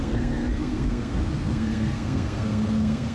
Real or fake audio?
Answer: fake